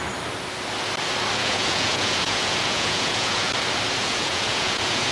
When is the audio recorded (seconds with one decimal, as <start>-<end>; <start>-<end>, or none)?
0.0-1.4; 3.5-4.0